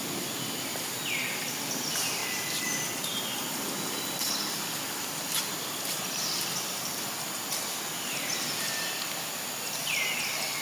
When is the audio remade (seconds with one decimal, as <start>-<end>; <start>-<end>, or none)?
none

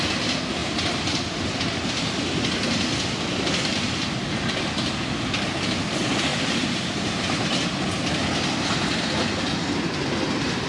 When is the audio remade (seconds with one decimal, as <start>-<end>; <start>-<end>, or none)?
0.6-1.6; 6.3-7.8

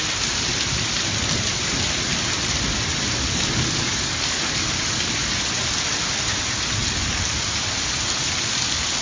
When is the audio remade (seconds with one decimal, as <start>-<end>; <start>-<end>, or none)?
3.2-5.4